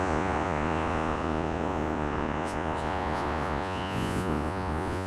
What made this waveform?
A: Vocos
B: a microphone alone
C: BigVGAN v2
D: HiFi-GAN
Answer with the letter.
A